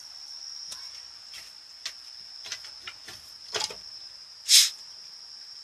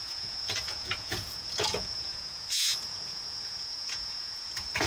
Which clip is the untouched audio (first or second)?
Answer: first